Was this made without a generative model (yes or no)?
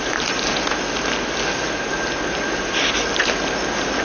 yes